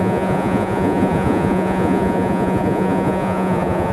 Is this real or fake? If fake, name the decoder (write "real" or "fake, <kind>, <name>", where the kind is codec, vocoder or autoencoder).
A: fake, vocoder, Vocos